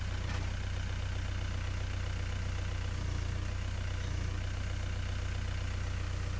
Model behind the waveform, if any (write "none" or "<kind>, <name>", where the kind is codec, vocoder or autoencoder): none